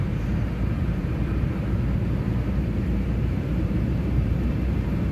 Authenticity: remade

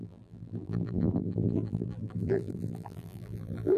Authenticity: remade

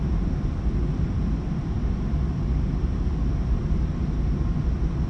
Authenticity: recorded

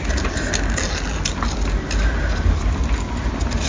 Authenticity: recorded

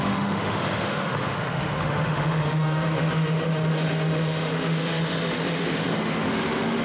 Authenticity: remade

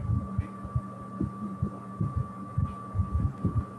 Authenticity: recorded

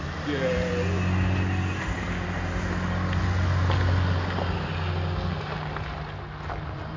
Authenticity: recorded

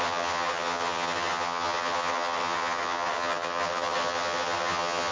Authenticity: remade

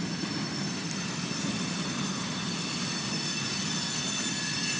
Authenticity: recorded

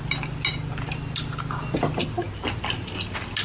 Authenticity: recorded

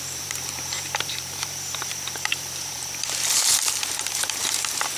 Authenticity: remade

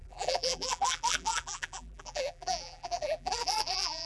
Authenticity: remade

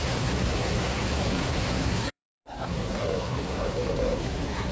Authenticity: remade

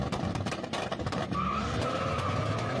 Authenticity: remade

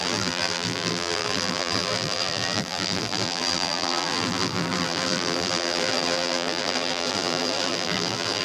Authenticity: remade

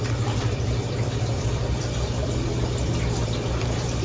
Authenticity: remade